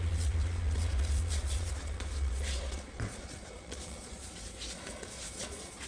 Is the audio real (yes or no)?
no